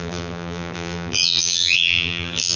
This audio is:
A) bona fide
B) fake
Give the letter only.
B